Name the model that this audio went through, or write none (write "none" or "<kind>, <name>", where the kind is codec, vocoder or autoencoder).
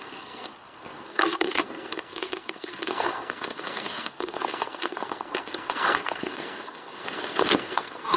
codec, SNAC